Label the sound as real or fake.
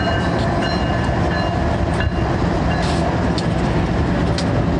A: real